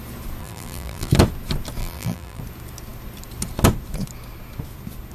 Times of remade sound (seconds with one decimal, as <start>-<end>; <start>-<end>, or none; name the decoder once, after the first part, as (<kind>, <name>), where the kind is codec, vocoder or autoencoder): 0.4-1.1 (vocoder, BigVGAN v2); 1.8-2.4